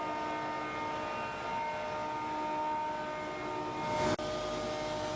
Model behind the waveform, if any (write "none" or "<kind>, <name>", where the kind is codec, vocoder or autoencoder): none